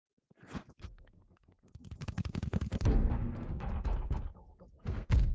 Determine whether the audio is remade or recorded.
remade